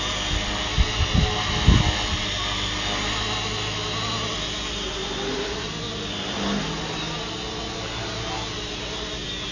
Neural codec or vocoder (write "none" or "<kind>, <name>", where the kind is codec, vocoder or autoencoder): none